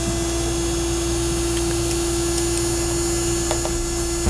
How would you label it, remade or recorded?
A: recorded